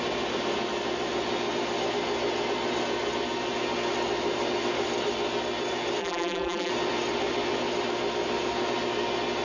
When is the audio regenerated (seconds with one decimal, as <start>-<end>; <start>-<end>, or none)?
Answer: 6.0-6.7